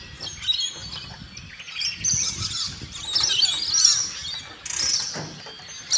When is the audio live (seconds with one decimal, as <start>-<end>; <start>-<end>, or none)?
0.0-6.0